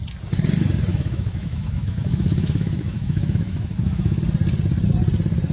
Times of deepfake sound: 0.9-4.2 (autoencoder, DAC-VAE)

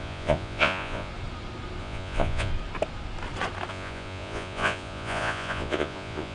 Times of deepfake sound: 0.0-1.1 (vocoder, Vocos); 1.8-2.5; 3.7-6.3

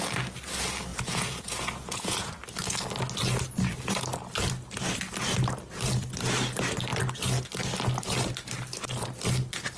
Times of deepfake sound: 0.9-2.3 (vocoder, Vocos)

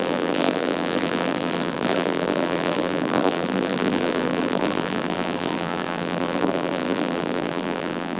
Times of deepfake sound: 0.0-8.2 (vocoder, BigVGAN v2)